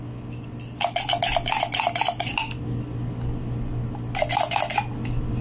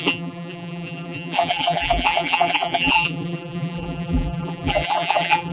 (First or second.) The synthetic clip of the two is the second